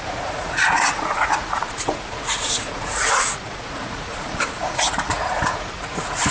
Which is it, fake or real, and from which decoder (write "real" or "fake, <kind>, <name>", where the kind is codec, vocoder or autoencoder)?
fake, vocoder, Vocos